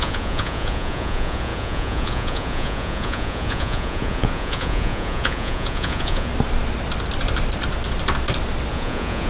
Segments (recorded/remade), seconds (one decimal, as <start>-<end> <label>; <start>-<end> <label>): 0.0-6.3 remade; 6.3-8.7 recorded; 8.7-9.3 remade